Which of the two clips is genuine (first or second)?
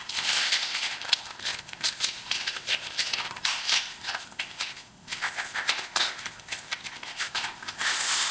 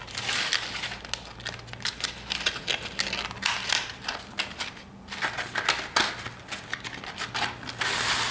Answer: second